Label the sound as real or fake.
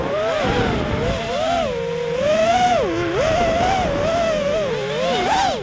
real